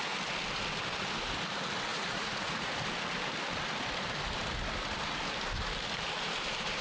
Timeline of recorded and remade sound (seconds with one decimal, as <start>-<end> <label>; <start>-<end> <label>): 0.0-1.9 recorded; 1.9-2.7 remade; 2.7-6.8 recorded